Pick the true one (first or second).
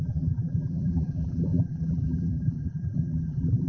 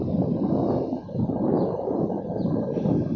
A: second